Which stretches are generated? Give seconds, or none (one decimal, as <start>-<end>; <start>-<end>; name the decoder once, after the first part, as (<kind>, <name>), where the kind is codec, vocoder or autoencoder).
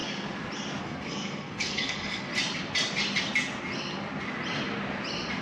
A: 0.8-2.3 (codec, SNAC)